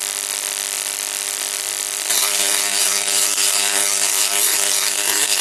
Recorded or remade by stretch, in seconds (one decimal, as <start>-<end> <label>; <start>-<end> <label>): 0.0-2.1 recorded; 2.1-5.4 remade